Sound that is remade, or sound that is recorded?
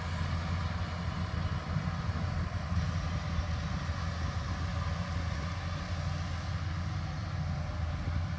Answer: recorded